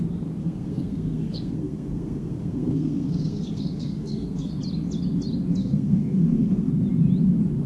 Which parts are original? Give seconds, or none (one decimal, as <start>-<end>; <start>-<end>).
0.0-0.4; 4.5-5.6; 6.7-7.7